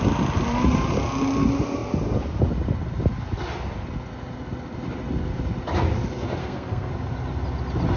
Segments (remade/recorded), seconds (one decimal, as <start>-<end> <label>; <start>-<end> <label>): 0.0-6.4 recorded; 6.4-6.9 remade; 6.9-8.0 recorded